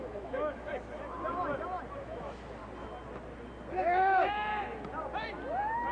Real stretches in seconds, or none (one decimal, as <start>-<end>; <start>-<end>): 0.7-2.0; 2.6-3.7; 4.5-5.9